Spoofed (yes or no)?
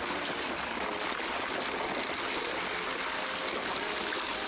no